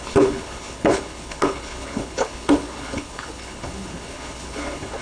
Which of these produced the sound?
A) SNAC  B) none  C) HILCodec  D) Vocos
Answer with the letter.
C